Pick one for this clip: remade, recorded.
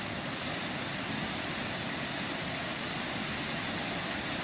recorded